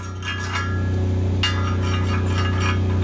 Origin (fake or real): real